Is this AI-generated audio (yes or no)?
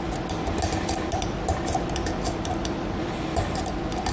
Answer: no